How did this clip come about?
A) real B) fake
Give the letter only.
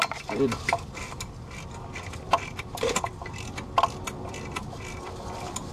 B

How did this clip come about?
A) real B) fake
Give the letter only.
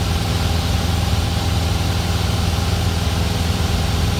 A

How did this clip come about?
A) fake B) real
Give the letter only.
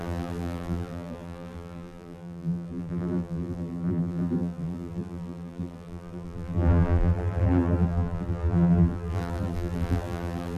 A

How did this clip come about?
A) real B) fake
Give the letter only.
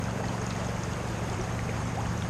B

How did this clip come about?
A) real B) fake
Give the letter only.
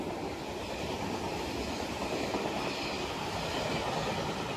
A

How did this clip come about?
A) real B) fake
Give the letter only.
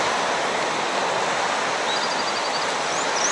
A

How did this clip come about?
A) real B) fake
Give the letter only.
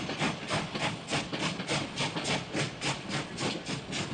A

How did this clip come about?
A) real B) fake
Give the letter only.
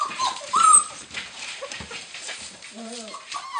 B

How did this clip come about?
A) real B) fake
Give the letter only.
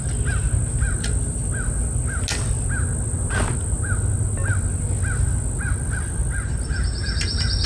A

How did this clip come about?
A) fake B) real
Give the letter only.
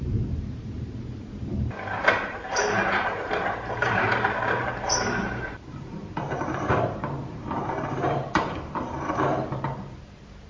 A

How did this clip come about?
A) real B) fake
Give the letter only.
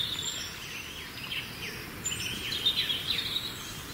A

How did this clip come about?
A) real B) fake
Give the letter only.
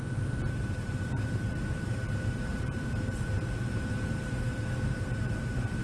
B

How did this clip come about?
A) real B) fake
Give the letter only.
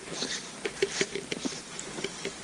B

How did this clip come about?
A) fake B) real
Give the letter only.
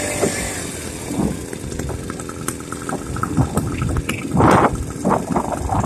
B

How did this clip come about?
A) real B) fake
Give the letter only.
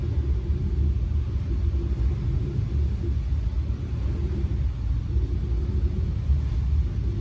A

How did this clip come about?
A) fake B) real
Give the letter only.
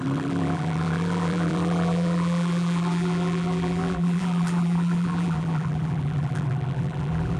A